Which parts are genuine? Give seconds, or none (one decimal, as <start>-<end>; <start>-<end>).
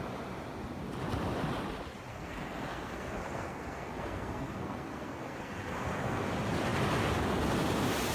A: 0.0-2.1; 6.3-8.1